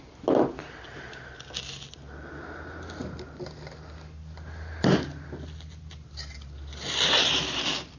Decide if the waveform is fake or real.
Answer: real